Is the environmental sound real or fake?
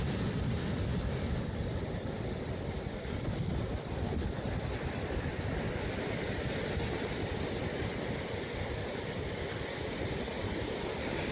real